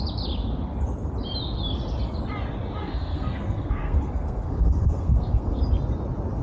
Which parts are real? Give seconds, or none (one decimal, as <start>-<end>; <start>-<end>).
0.0-2.8; 5.6-6.4